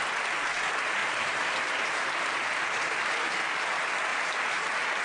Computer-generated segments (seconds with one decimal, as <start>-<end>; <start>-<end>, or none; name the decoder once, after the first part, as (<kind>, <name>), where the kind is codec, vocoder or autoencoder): 1.0-3.3 (vocoder, BigVGAN v2); 4.1-5.0